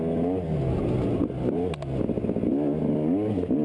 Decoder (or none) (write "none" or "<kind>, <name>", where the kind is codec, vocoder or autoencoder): none